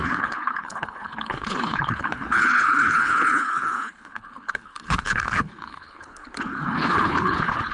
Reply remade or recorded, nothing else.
remade